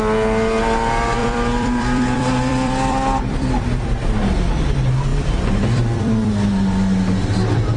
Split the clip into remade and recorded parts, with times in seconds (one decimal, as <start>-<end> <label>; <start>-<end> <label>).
0.0-1.2 recorded; 1.2-4.2 remade; 4.2-5.1 recorded; 5.1-6.3 remade; 6.3-7.8 recorded